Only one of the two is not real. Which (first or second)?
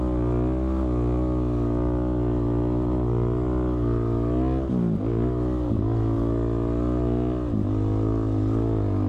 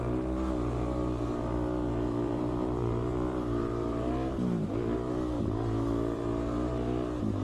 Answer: second